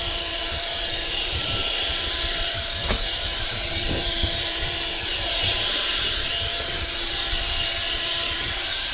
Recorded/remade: remade